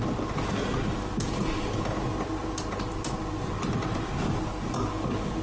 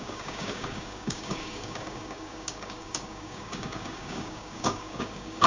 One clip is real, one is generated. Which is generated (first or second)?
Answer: second